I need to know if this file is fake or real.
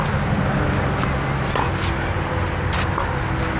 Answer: real